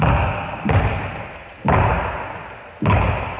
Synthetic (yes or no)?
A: no